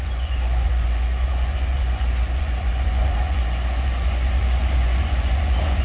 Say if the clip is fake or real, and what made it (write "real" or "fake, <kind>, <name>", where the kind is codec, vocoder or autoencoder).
fake, vocoder, Vocos